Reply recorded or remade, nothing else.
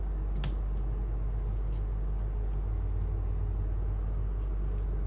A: recorded